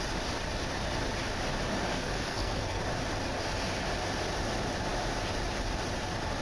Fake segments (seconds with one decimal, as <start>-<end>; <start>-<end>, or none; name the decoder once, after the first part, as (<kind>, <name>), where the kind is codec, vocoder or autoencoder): 1.9-2.8 (codec, SNAC)